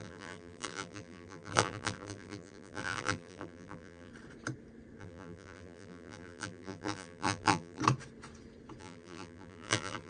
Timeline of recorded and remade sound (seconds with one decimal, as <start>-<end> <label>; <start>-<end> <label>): 0.0-4.1 remade; 4.1-5.0 recorded; 5.0-7.8 remade; 7.8-8.8 recorded; 8.8-10.1 remade